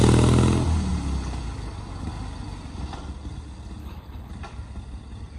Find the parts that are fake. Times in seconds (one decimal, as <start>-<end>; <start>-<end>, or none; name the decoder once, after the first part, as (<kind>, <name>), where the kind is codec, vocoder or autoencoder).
3.8-4.3 (codec, HILCodec)